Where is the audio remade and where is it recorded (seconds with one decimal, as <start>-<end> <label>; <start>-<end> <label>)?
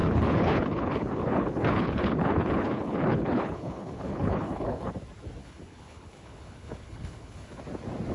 0.0-4.9 remade; 4.9-5.4 recorded; 5.4-7.6 remade; 7.6-8.1 recorded